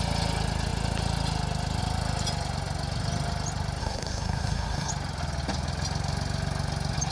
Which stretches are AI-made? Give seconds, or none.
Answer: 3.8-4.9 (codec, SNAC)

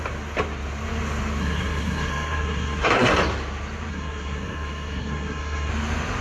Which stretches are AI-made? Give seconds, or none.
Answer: 1.4-3.1 (codec, SNAC); 3.9-5.7

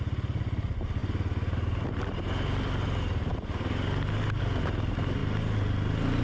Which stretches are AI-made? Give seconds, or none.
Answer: none

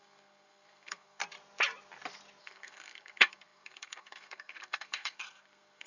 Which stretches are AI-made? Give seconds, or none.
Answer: 0.0-1.2 (codec, SNAC); 2.4-5.9

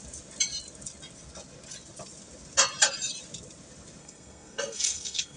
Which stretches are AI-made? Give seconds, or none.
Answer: 4.0-5.4 (codec, SNAC)

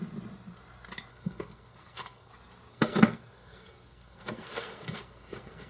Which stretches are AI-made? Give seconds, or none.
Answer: 1.1-2.3 (codec, SNAC); 2.7-5.7

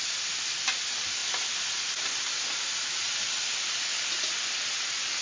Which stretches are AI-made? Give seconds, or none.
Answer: none